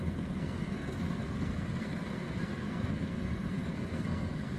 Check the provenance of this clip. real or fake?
fake